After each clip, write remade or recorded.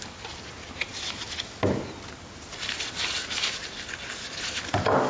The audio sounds recorded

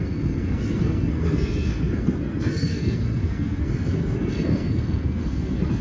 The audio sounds remade